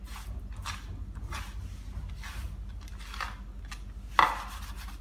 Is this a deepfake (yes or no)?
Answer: no